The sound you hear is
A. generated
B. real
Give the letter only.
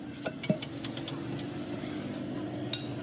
B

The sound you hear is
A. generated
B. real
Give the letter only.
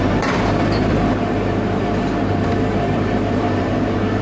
A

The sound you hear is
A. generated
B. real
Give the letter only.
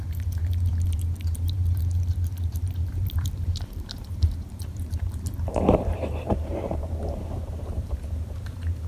A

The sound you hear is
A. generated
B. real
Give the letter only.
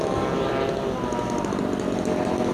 B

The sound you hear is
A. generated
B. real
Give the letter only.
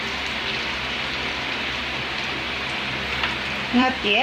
A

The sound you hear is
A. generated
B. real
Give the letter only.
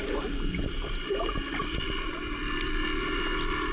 B